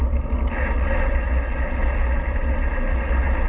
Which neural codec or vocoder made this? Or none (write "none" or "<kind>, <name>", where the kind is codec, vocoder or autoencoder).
none